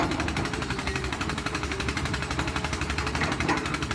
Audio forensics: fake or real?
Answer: fake